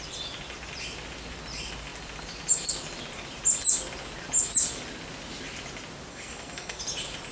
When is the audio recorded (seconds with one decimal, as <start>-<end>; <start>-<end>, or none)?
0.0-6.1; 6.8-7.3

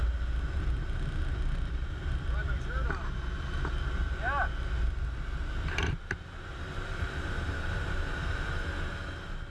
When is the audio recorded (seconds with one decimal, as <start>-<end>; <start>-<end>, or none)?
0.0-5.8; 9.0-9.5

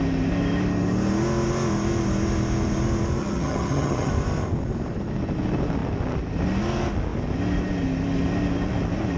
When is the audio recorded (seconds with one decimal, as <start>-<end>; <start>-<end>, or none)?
0.0-3.2; 4.1-9.2

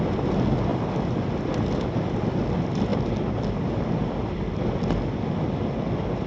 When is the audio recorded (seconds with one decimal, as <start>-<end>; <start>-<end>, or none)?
0.0-6.3

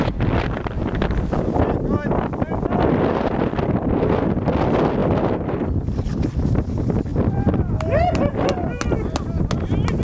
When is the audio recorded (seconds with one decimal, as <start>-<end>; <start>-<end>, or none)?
0.0-7.1; 7.7-10.0